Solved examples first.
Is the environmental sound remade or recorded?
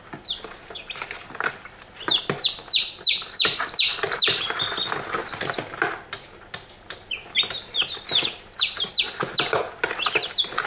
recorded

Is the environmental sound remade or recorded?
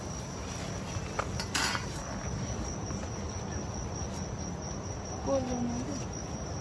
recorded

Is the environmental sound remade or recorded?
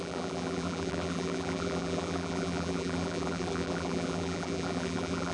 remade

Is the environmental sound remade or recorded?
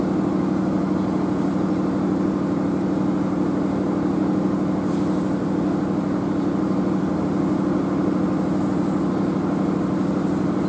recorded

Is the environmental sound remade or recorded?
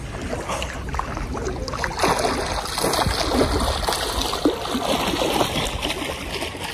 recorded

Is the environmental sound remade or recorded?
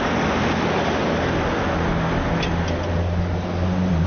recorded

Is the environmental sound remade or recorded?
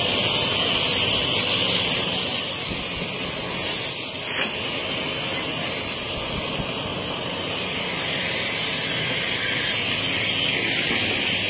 recorded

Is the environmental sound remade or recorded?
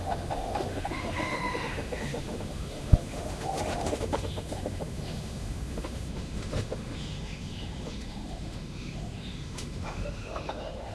remade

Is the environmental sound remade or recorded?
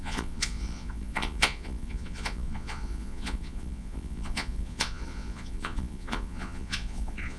remade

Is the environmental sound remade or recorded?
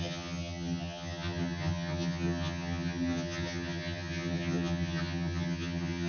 remade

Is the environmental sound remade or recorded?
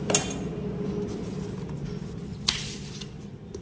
recorded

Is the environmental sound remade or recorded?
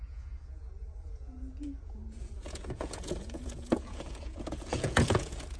remade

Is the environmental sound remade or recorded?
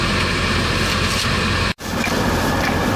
remade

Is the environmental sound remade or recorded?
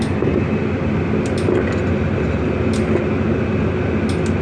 recorded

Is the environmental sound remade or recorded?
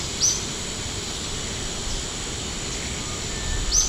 recorded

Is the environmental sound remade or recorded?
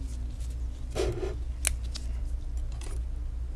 recorded